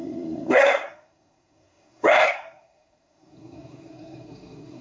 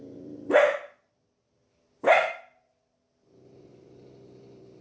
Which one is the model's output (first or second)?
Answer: first